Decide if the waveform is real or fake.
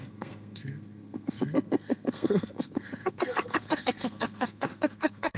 fake